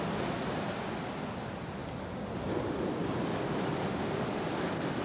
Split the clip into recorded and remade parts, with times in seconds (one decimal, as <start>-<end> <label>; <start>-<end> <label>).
0.0-5.0 recorded